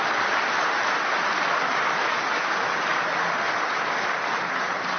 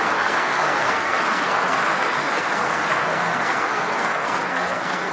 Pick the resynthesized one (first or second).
second